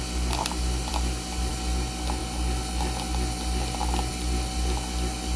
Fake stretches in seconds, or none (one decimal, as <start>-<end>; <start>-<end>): none